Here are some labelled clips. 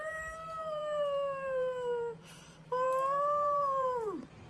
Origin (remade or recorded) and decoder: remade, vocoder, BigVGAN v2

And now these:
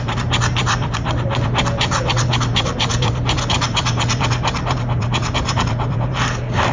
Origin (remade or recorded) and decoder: remade, vocoder, BigVGAN v2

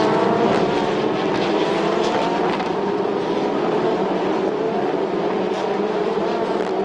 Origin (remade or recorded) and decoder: remade, vocoder, BigVGAN v2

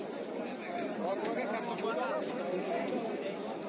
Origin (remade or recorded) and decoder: remade, vocoder, BigVGAN v2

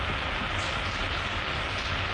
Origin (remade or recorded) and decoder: recorded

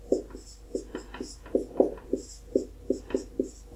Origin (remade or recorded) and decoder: recorded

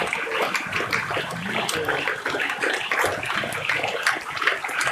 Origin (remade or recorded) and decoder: recorded